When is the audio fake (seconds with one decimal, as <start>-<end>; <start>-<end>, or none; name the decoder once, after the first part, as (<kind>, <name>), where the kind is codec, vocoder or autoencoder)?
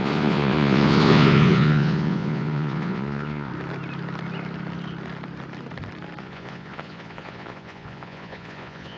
0.0-3.5 (vocoder, Vocos); 6.2-9.0